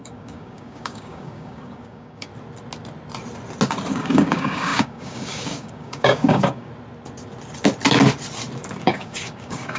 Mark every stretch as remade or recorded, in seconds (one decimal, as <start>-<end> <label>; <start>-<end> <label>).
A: 0.0-2.3 remade; 2.3-3.9 recorded; 3.9-6.7 remade; 6.7-8.8 recorded; 8.8-9.8 remade